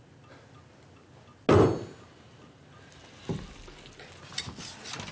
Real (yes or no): yes